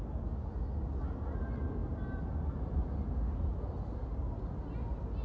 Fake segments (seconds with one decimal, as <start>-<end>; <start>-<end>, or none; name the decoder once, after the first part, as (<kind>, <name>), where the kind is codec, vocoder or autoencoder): none